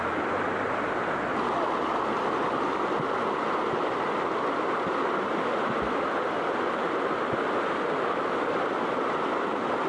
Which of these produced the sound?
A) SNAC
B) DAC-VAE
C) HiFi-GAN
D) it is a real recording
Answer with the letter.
D